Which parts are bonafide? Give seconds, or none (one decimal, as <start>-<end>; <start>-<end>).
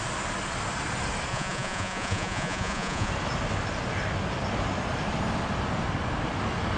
0.0-1.3; 3.1-6.8